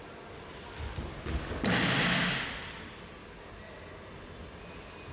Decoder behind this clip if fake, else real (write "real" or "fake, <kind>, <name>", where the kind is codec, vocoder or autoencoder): real